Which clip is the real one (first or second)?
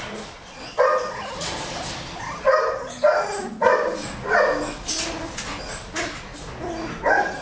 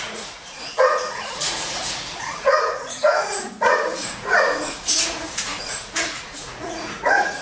first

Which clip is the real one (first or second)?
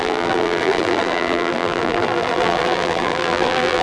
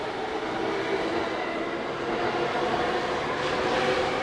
second